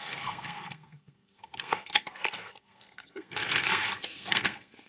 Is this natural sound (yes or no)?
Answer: no